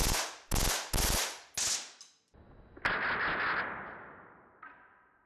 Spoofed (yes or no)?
no